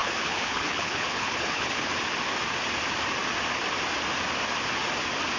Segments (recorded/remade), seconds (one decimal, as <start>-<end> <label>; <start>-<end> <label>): 0.0-1.9 remade; 1.9-5.4 recorded